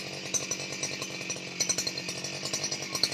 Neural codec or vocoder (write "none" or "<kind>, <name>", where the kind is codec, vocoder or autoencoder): none